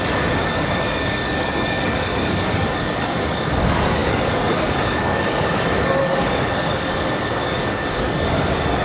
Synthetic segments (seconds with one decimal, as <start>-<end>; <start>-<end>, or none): 0.0-8.8